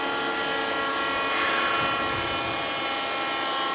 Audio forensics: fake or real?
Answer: real